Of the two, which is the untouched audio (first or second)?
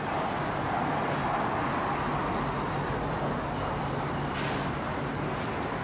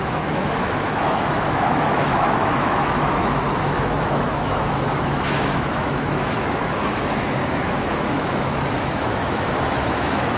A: first